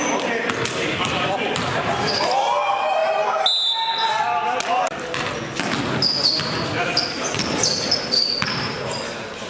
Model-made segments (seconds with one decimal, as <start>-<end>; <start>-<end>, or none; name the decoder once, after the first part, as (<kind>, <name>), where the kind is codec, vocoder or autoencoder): none